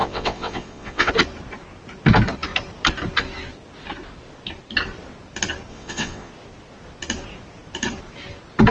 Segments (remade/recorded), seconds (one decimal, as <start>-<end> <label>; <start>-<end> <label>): 0.0-1.1 remade; 1.1-5.7 recorded; 5.7-6.3 remade; 6.3-8.7 recorded

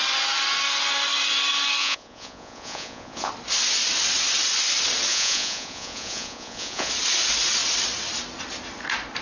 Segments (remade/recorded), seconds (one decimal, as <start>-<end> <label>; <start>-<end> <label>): 0.0-1.8 recorded; 1.8-3.3 remade; 3.3-5.1 recorded; 5.1-6.9 remade; 6.9-9.2 recorded

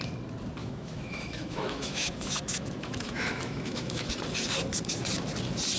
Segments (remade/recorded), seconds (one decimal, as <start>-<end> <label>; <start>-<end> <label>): 0.0-0.6 recorded; 0.6-4.1 remade; 4.1-5.8 recorded

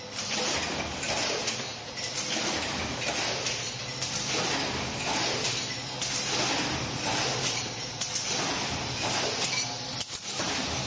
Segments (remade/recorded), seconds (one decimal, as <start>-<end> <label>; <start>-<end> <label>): 0.0-10.9 recorded

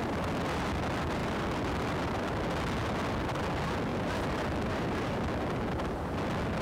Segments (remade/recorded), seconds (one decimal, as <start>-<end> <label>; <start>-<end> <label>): 0.0-1.2 recorded; 1.2-2.3 remade; 2.3-3.9 recorded; 3.9-5.4 remade; 5.4-6.6 recorded